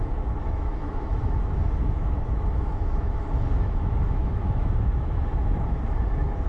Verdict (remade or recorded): remade